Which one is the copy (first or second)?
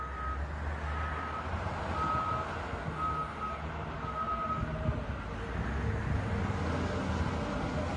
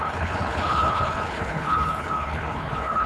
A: second